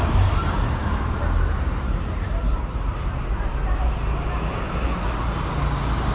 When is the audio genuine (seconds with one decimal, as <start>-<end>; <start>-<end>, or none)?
0.0-0.8; 4.5-6.1